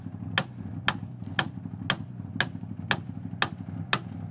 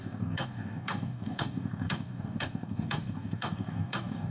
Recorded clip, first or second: first